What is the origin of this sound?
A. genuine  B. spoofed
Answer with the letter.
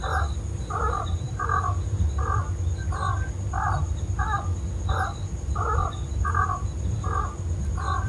A